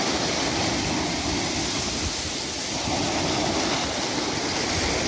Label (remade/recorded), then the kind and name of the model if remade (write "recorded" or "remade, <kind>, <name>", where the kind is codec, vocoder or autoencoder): recorded